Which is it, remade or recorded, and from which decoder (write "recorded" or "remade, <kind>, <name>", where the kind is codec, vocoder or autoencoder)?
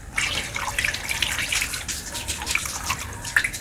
remade, vocoder, BigVGAN v2